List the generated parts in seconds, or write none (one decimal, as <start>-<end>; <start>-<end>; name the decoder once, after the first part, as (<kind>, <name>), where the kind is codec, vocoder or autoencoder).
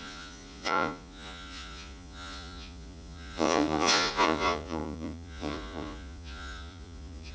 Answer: 0.0-7.3 (vocoder, Vocos)